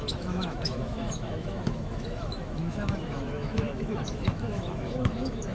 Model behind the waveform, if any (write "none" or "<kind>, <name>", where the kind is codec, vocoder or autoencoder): autoencoder, DAC-VAE